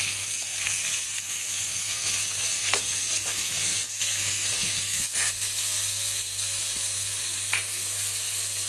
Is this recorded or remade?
remade